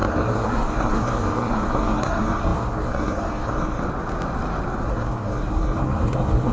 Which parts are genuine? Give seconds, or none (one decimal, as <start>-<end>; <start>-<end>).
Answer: 3.8-4.9